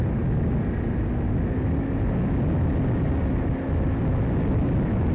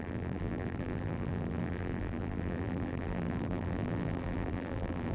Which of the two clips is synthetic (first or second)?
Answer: second